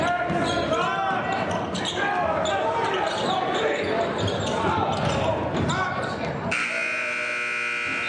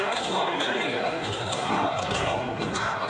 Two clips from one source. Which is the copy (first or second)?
second